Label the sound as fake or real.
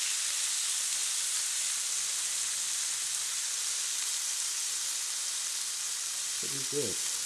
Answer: real